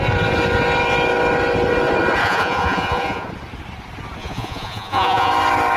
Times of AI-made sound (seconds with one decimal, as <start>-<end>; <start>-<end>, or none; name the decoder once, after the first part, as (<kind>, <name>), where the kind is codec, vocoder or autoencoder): 2.2-3.3 (vocoder, Vocos); 4.2-5.3